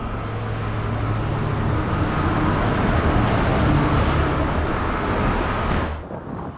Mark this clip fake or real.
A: real